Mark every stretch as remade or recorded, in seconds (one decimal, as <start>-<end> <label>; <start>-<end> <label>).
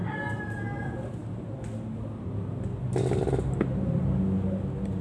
0.0-5.0 recorded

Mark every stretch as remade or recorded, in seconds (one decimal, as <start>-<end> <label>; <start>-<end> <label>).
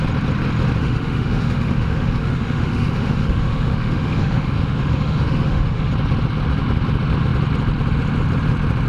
0.0-0.8 recorded; 0.8-5.9 remade; 5.9-8.9 recorded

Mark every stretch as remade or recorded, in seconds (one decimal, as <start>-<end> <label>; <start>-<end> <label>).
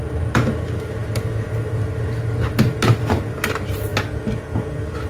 0.0-3.9 remade; 3.9-5.1 recorded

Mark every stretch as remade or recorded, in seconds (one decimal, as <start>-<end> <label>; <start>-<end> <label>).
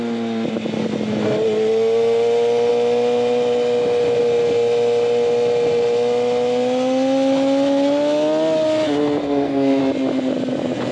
0.0-9.2 recorded; 9.2-9.8 remade; 9.8-10.9 recorded